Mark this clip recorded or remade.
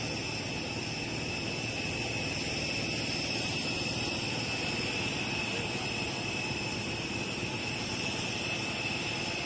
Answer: recorded